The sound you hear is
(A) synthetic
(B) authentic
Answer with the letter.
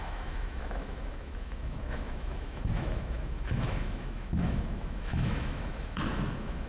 A